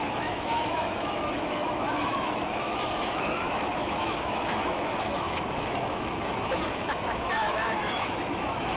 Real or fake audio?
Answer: fake